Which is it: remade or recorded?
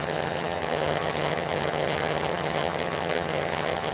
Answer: remade